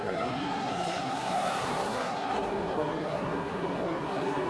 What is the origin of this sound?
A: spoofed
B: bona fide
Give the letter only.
A